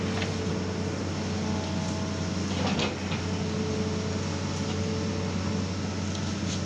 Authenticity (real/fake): real